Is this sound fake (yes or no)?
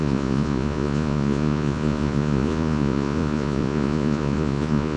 yes